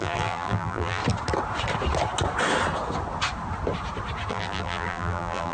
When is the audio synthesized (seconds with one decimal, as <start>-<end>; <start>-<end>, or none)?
0.0-1.0; 4.3-5.5

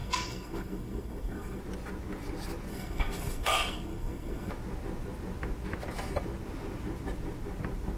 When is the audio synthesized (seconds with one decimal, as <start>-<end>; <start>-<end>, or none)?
0.0-1.6; 2.7-4.5

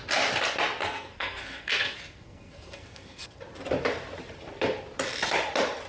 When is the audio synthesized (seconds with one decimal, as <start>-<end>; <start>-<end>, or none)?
0.8-3.4

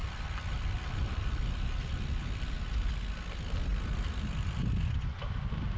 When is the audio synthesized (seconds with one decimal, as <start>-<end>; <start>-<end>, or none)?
0.0-1.4; 3.7-4.6

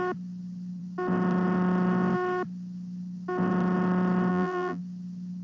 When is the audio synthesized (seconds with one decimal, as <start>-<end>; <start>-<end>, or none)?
4.3-4.8

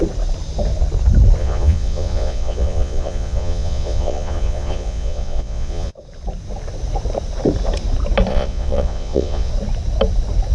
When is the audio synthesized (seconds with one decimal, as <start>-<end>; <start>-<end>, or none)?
1.4-5.9; 8.3-9.5

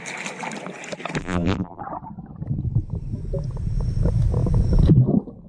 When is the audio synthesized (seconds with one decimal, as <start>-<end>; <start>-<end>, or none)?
1.2-1.8